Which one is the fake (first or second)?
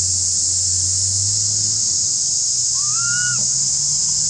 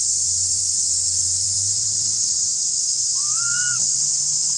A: second